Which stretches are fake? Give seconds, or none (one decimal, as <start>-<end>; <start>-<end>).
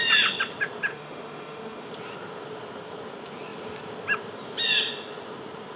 0.9-1.9